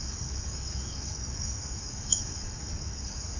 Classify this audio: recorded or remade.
remade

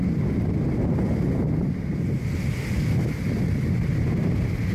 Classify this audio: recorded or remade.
recorded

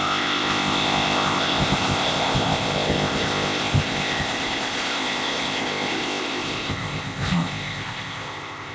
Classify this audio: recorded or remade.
remade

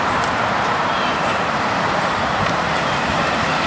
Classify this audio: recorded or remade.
remade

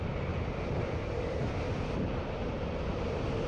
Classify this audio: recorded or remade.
recorded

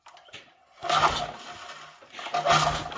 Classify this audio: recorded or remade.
recorded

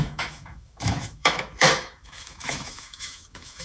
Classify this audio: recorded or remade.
remade